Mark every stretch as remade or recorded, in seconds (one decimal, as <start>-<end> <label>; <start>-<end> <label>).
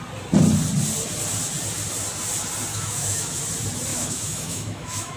0.0-2.7 recorded; 2.7-3.4 remade; 3.4-3.9 recorded; 3.9-5.2 remade